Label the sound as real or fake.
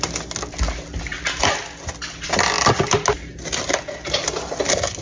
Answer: real